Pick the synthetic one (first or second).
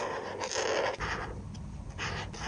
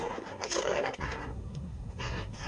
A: second